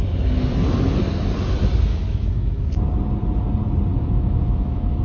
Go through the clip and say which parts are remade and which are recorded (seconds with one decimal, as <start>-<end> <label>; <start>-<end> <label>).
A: 0.0-1.9 recorded; 1.9-2.7 remade; 2.7-3.9 recorded; 3.9-5.0 remade

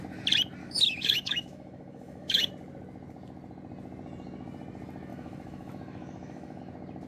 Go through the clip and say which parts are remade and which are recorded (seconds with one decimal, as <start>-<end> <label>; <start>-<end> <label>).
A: 0.0-0.6 recorded; 0.6-2.5 remade; 2.5-5.1 recorded; 5.1-6.6 remade; 6.6-7.1 recorded